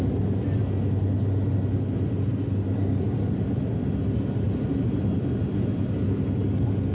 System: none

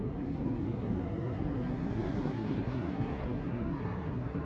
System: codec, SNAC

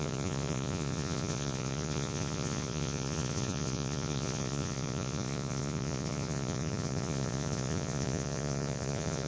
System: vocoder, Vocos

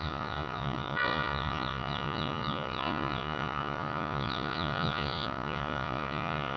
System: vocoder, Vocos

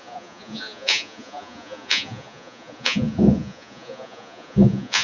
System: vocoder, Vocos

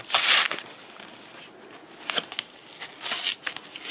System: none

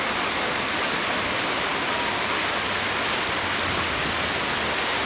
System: none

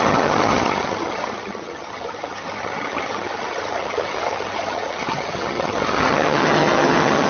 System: vocoder, HiFi-GAN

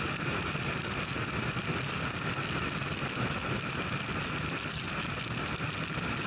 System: none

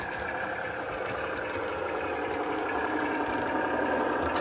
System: none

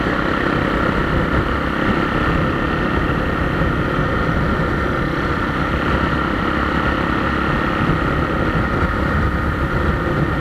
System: none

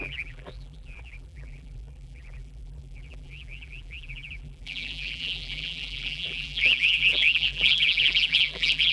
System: vocoder, BigVGAN v2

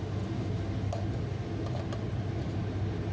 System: none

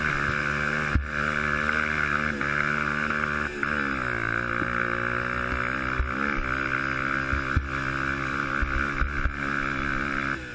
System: none